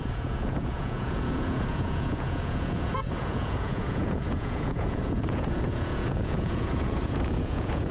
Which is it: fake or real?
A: fake